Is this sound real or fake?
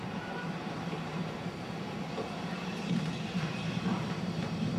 fake